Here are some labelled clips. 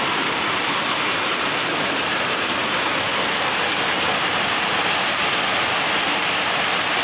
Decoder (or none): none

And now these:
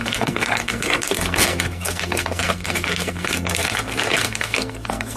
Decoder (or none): codec, SNAC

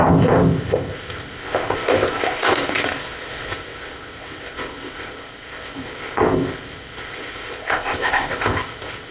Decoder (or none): codec, ZipCodec